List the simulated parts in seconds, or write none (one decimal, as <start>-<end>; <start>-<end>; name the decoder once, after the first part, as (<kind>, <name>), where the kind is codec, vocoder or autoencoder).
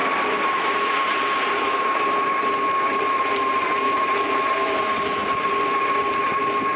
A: none